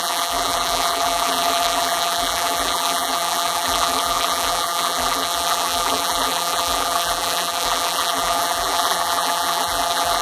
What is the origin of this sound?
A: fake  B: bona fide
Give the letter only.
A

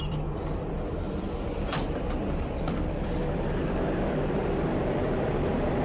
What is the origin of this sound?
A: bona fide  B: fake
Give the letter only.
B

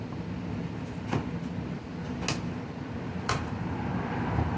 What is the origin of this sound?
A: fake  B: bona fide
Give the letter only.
B